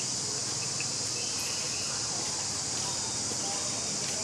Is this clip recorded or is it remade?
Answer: recorded